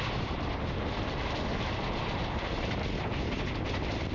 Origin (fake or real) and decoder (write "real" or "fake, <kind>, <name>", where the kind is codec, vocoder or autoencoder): real